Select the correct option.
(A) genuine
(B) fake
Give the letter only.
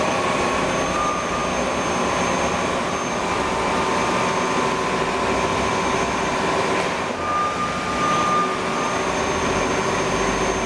A